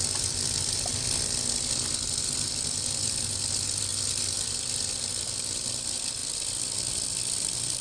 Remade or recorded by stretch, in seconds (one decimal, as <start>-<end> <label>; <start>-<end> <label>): 0.0-6.2 recorded; 6.2-7.8 remade